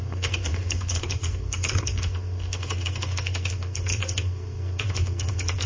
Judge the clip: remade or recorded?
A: remade